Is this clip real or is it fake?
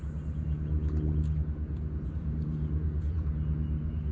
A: fake